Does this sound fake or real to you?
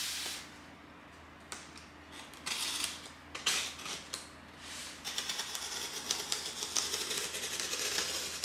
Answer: real